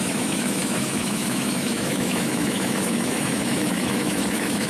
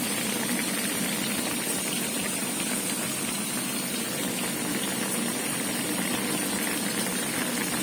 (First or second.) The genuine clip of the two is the second